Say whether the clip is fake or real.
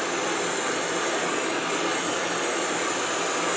real